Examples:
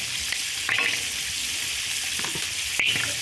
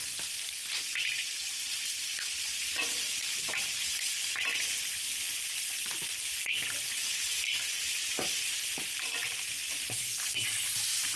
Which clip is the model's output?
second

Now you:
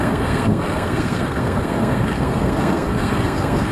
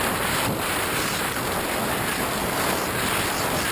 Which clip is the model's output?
first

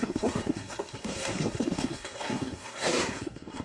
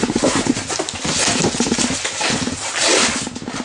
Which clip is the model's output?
first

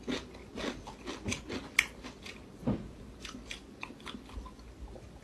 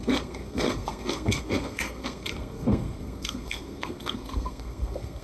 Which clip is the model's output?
second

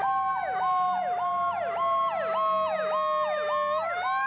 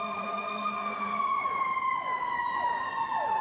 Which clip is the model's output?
second